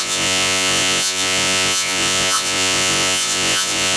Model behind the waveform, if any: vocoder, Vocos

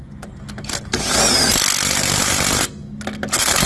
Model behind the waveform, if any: none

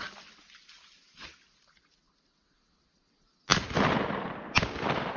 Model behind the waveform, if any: none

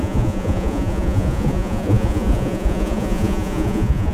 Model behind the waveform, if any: vocoder, Vocos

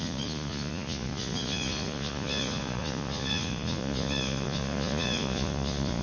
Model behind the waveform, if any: vocoder, Vocos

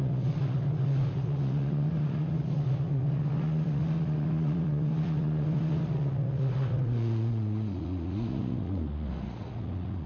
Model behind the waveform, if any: vocoder, Vocos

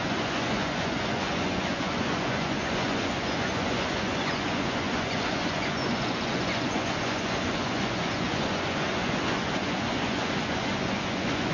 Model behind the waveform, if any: vocoder, Vocos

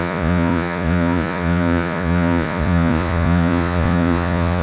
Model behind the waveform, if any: vocoder, Vocos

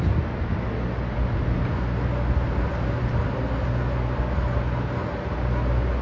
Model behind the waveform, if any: none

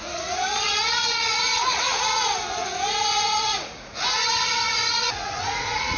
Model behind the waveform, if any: vocoder, Vocos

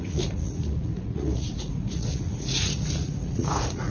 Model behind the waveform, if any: vocoder, Vocos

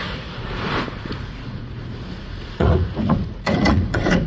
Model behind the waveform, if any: vocoder, Vocos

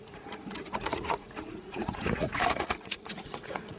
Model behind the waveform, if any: vocoder, Vocos